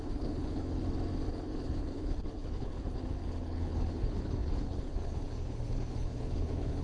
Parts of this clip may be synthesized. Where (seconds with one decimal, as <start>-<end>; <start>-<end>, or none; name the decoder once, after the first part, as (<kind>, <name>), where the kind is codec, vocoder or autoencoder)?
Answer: 0.0-0.8 (codec, HILCodec); 1.3-6.8

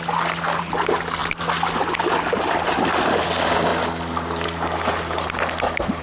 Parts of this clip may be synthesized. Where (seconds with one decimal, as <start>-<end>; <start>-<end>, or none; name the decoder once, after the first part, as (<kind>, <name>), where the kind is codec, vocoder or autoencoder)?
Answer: none